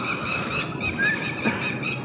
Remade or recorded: recorded